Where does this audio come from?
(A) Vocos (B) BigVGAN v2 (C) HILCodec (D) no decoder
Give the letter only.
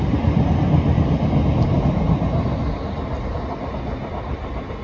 D